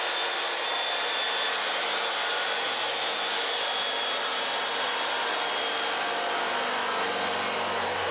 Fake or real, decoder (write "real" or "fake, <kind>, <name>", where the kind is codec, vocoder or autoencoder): real